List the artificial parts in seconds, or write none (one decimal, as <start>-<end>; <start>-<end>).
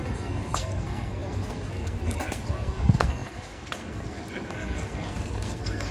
0.0-5.9